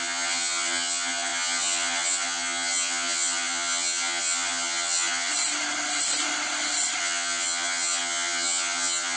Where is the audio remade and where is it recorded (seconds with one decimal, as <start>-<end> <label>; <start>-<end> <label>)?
0.0-5.3 remade; 5.3-7.0 recorded; 7.0-9.2 remade